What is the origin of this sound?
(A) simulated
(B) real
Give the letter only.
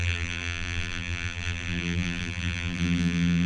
A